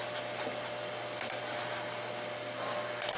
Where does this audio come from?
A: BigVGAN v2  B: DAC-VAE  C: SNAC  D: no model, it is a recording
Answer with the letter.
D